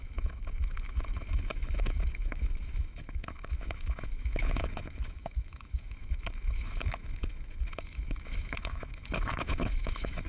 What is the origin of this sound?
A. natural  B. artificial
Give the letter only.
B